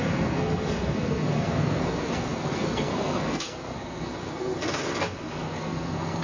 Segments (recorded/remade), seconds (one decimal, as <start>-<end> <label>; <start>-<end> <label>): 0.0-6.2 remade

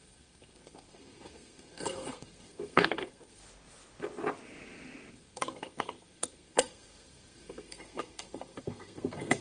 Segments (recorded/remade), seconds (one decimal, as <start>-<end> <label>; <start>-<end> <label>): 0.0-3.4 remade; 3.4-5.1 recorded; 5.1-9.4 remade

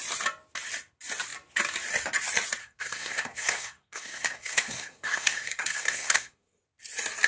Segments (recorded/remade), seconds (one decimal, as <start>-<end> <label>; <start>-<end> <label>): 0.0-2.6 recorded; 2.6-6.6 remade; 6.6-7.3 recorded

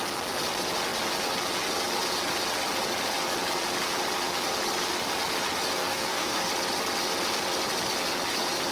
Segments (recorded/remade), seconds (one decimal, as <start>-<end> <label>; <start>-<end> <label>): 0.0-5.8 recorded; 5.8-6.5 remade; 6.5-8.7 recorded

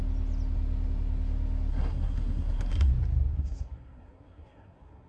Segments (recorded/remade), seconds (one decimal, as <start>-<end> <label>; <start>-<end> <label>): 0.0-1.7 recorded; 1.7-2.9 remade; 2.9-3.3 recorded; 3.3-5.1 remade

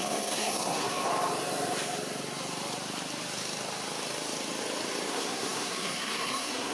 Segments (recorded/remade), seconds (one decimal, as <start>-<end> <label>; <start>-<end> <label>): 0.0-1.1 remade; 1.1-5.1 recorded; 5.1-6.7 remade